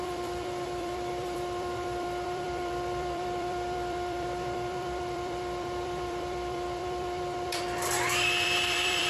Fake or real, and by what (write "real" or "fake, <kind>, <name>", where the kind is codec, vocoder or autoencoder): fake, vocoder, BigVGAN v2